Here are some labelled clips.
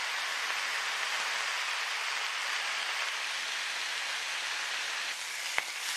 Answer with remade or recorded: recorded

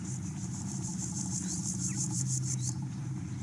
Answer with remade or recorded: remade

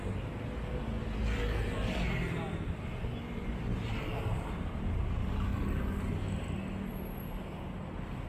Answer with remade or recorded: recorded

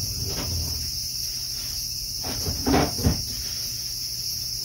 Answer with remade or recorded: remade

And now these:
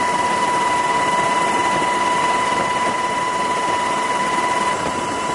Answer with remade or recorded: remade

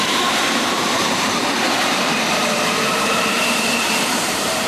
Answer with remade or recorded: remade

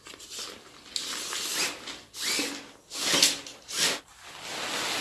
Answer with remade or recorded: recorded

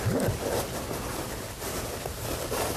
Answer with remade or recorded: remade